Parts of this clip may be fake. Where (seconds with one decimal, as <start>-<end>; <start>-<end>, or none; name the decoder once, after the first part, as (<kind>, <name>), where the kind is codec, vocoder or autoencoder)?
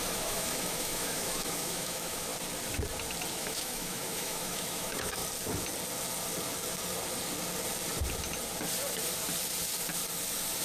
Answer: 0.0-2.3 (autoencoder, DAC-VAE); 3.3-5.2